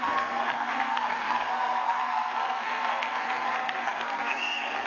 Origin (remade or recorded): remade